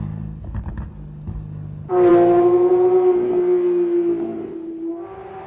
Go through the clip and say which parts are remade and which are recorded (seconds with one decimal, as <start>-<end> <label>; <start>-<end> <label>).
0.0-5.5 recorded